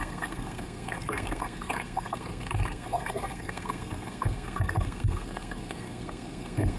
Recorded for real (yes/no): no